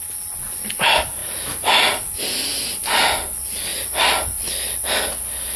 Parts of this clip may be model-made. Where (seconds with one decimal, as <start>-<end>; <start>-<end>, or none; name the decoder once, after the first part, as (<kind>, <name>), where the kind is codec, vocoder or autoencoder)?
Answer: none